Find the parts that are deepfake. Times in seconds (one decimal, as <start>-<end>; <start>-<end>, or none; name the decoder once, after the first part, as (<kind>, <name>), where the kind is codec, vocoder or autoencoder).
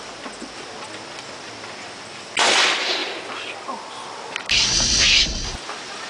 none